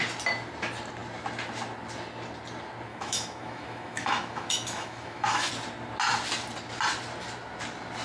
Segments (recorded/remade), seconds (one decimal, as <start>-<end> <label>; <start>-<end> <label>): 0.0-2.9 recorded; 2.9-5.5 remade; 5.5-8.0 recorded